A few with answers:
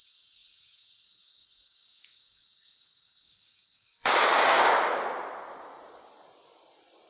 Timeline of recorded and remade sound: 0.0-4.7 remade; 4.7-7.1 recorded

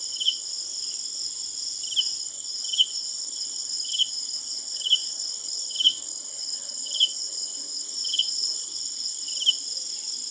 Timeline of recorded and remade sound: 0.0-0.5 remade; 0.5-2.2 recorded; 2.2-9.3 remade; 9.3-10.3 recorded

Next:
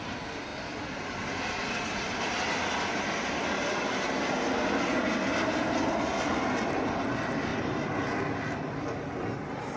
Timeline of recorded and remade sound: 0.0-9.8 recorded

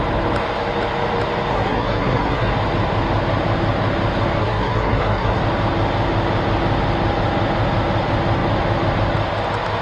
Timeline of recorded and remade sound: 0.0-1.5 recorded; 1.5-2.5 remade; 2.5-4.4 recorded; 4.4-5.4 remade; 5.4-9.8 recorded

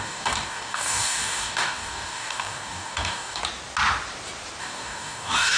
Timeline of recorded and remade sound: 0.0-3.4 remade; 3.4-4.6 recorded; 4.6-5.6 remade

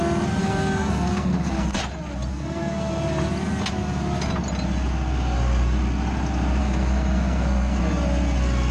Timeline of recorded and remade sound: 0.0-0.4 recorded; 0.4-1.8 remade; 1.8-2.3 recorded; 2.3-2.9 remade; 2.9-6.6 recorded; 6.6-7.8 remade; 7.8-8.7 recorded